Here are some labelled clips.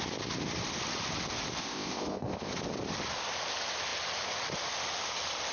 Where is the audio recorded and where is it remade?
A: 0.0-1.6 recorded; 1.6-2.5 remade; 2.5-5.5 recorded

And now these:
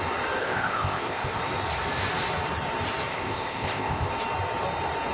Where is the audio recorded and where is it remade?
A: 0.0-0.4 recorded; 0.4-1.4 remade; 1.4-3.1 recorded; 3.1-4.1 remade; 4.1-5.1 recorded

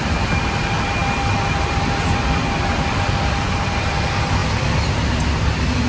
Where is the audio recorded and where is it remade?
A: 0.0-5.9 recorded

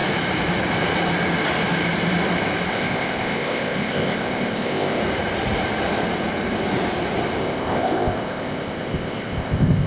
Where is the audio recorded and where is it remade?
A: 0.0-2.7 recorded; 2.7-5.0 remade; 5.0-7.4 recorded; 7.4-9.9 remade